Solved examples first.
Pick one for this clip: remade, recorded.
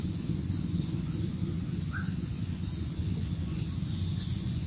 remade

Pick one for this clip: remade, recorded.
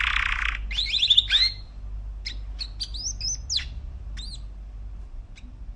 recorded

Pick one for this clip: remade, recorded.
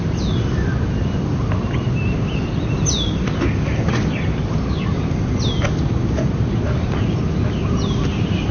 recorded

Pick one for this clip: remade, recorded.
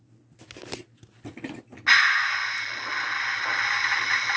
recorded